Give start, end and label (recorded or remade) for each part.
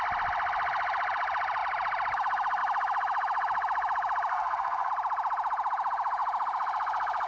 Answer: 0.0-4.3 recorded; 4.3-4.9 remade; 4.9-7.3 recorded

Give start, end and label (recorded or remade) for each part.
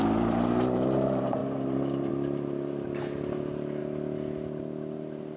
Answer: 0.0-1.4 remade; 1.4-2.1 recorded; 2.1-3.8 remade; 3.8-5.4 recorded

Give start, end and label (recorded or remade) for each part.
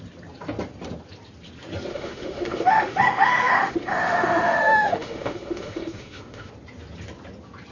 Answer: 0.0-1.9 recorded; 1.9-6.5 remade; 6.5-7.7 recorded